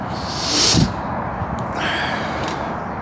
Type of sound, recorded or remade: remade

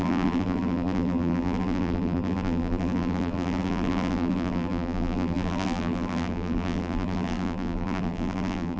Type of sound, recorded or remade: remade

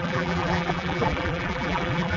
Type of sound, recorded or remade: remade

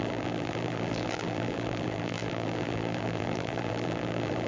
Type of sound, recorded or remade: remade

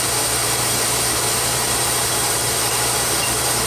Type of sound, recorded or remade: remade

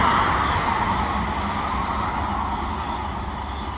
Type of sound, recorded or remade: recorded